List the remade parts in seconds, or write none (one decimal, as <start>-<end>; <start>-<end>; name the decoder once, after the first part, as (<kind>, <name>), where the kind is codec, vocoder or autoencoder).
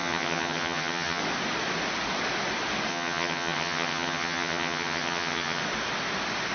0.0-1.2 (vocoder, HiFi-GAN); 2.9-5.6